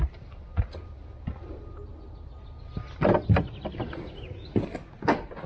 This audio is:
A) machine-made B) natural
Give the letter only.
B